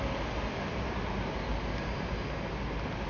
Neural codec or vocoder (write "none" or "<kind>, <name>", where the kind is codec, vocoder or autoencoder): none